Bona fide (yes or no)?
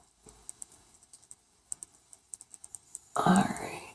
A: yes